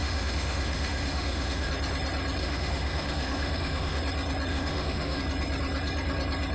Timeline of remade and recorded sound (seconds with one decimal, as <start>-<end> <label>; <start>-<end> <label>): 0.0-1.7 remade; 1.7-2.4 recorded; 2.4-4.0 remade; 4.0-4.5 recorded; 4.5-5.2 remade; 5.2-6.5 recorded